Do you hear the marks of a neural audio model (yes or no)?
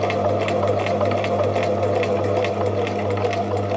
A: no